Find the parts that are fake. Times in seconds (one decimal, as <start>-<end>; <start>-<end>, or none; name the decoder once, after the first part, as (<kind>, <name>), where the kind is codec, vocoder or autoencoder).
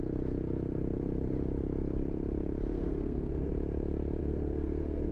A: 2.7-3.5 (codec, SNAC); 4.2-5.1